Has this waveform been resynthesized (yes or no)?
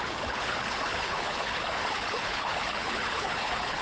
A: yes